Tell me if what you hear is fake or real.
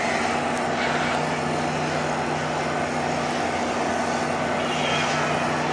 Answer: real